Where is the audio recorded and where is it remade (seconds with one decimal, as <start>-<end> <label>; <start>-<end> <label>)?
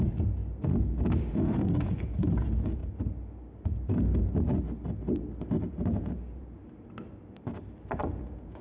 0.0-0.4 remade; 0.4-1.3 recorded; 1.3-2.8 remade; 2.8-5.7 recorded; 5.7-6.6 remade; 6.6-8.2 recorded; 8.2-8.6 remade